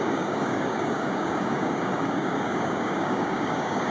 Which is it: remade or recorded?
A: remade